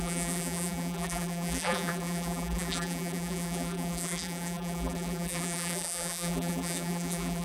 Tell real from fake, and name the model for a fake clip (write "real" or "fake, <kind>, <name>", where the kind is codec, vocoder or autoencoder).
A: fake, vocoder, BigVGAN v2